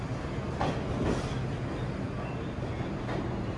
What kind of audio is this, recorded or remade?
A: recorded